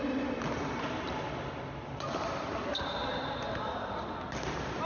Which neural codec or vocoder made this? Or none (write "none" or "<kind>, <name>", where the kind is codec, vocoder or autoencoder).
none